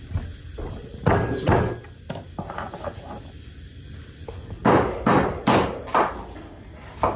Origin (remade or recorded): recorded